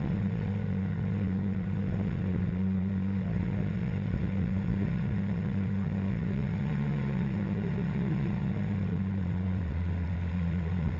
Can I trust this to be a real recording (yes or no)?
no